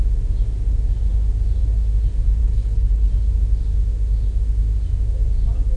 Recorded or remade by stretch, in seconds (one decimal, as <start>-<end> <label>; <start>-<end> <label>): 0.0-2.4 recorded; 2.4-3.1 remade; 3.1-5.8 recorded